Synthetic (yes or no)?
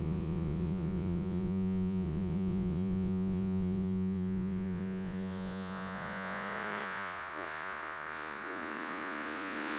yes